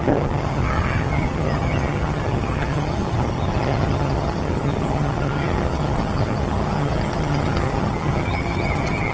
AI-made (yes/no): yes